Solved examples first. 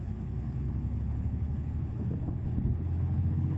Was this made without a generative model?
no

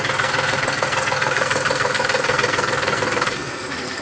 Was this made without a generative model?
no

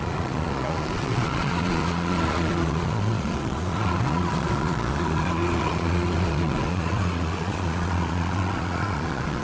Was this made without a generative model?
no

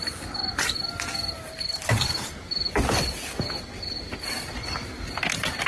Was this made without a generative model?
yes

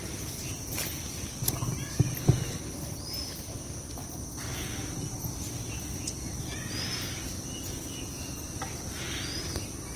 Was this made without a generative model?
yes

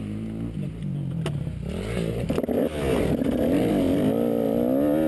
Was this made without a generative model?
yes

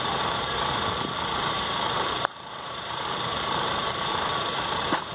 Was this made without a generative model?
no